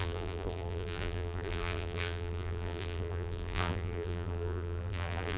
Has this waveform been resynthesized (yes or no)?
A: yes